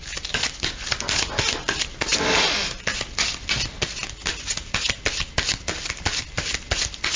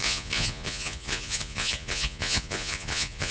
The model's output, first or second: second